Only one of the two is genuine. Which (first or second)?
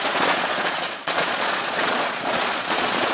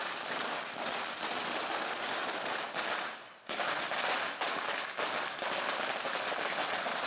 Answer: second